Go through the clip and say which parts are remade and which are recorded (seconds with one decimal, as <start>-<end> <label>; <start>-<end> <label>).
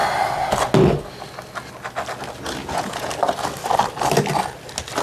0.0-2.6 recorded; 2.6-3.1 remade; 3.1-5.0 recorded